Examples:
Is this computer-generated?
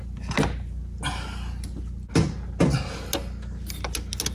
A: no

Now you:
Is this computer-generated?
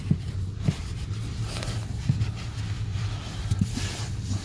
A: no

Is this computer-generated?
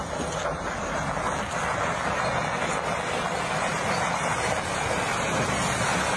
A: no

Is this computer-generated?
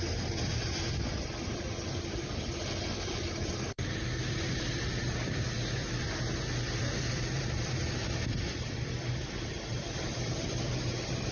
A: yes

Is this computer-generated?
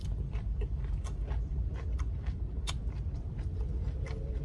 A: yes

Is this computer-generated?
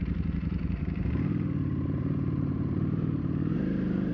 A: yes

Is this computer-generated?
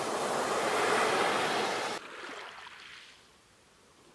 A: no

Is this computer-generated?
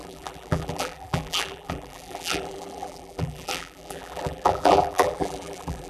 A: yes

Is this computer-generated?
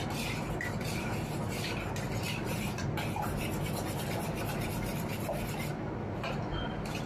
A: no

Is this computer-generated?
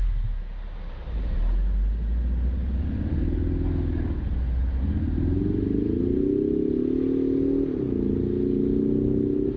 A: no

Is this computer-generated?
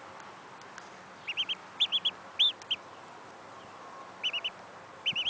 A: no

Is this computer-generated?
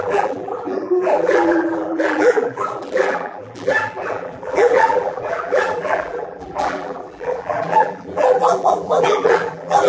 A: yes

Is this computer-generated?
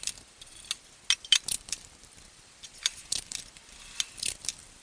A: no